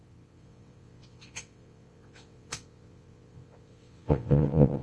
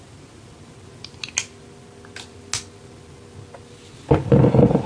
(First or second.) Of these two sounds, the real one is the second